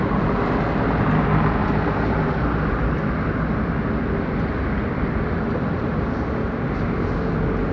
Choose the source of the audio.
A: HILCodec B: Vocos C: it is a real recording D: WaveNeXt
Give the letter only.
C